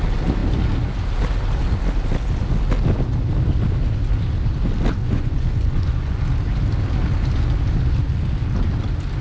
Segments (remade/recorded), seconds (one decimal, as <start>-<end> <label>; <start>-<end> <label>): 0.0-5.0 recorded; 5.0-6.2 remade; 6.2-9.2 recorded